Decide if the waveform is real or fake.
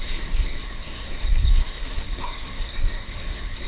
fake